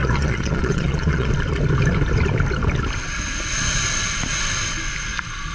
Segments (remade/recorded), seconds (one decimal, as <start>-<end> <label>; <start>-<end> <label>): 0.0-1.3 remade; 1.3-5.5 recorded

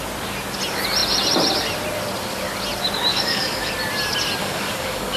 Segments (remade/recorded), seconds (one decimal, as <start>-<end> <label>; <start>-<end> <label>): 0.0-3.1 recorded; 3.1-3.7 remade; 3.7-4.4 recorded; 4.4-5.2 remade

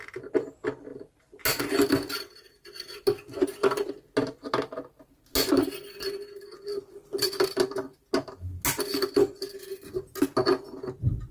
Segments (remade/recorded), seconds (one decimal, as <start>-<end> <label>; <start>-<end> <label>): 0.0-11.3 recorded

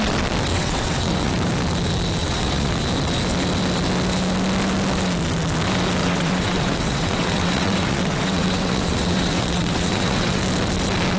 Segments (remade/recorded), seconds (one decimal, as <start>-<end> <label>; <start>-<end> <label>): 0.0-0.5 recorded; 0.5-1.3 remade; 1.3-2.2 recorded; 2.2-2.8 remade; 2.8-6.0 recorded; 6.0-10.4 remade; 10.4-11.2 recorded